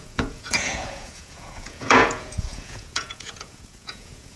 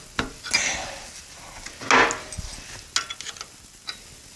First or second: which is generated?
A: first